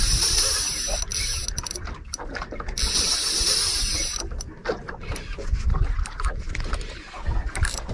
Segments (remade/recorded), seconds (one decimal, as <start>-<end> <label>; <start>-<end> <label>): 0.0-7.9 recorded